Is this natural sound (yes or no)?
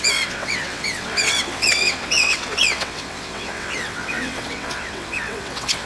no